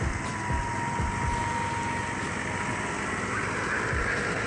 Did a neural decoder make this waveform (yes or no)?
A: no